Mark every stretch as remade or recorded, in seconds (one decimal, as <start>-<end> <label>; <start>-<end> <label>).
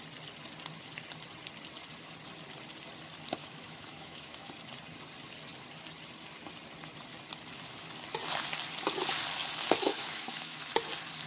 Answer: 0.0-3.4 recorded; 3.4-4.5 remade; 4.5-9.9 recorded; 9.9-10.7 remade; 10.7-11.3 recorded